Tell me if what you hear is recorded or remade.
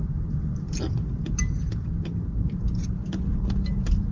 recorded